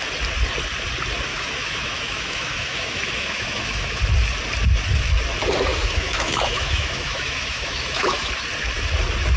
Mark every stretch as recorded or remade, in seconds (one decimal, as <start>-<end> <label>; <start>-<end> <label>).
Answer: 0.0-1.3 recorded; 1.3-4.0 remade; 4.0-5.7 recorded; 5.7-8.3 remade; 8.3-9.4 recorded